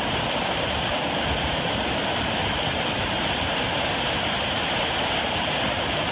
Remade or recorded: recorded